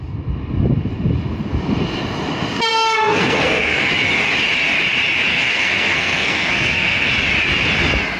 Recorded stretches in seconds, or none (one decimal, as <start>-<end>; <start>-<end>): 0.0-2.7; 3.9-5.3; 7.1-8.2